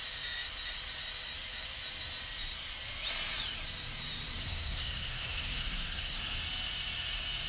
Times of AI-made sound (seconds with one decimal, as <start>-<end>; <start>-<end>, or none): 4.4-6.2